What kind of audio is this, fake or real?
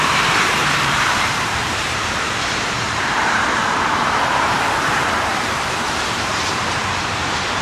fake